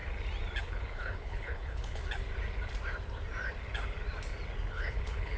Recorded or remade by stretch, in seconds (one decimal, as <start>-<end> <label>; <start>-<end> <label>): 0.0-0.6 recorded; 0.6-2.0 remade; 2.0-4.7 recorded; 4.7-5.4 remade